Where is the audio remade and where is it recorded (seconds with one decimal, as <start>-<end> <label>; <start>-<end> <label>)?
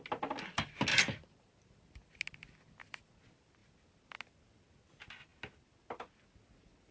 0.0-6.9 recorded